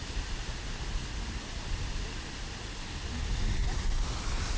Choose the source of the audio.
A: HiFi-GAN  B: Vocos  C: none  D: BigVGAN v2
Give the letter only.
C